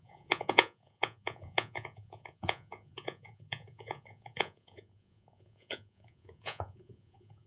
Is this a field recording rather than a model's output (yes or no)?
no